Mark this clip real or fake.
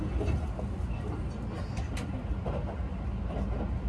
real